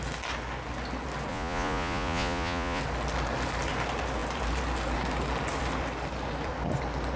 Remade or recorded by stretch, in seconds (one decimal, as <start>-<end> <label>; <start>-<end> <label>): 0.0-1.3 recorded; 1.3-2.8 remade; 2.8-7.2 recorded